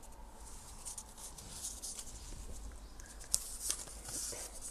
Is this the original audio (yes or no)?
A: yes